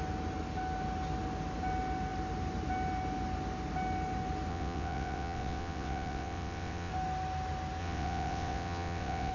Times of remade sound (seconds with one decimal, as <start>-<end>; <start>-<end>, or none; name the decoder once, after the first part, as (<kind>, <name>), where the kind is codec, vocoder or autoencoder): 4.5-6.9 (vocoder, WaveNeXt); 7.8-9.3